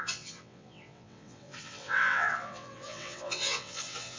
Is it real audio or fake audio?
fake